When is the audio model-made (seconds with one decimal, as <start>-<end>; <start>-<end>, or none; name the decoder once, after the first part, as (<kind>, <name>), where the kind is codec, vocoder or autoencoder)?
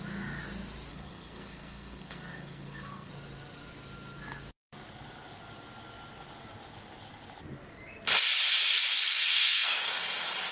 0.9-3.1 (codec, SNAC); 9.1-9.9